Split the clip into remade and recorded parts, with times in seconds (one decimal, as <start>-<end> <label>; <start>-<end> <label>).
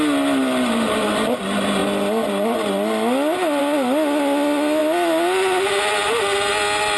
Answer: 0.0-7.0 recorded